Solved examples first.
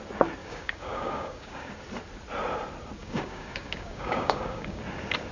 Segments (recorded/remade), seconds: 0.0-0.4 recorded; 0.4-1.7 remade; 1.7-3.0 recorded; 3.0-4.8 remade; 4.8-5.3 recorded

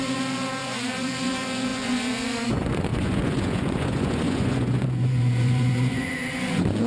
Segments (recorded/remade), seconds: 0.0-6.9 remade

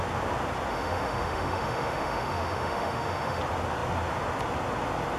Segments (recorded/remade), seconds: 0.0-0.7 recorded; 0.7-3.4 remade; 3.4-5.2 recorded

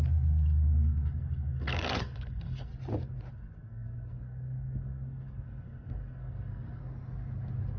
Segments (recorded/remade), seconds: 0.0-2.7 remade; 2.7-3.3 recorded; 3.3-6.8 remade; 6.8-7.8 recorded

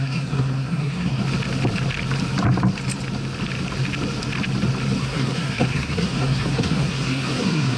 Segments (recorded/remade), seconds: 0.0-1.2 remade; 1.2-5.0 recorded; 5.0-7.8 remade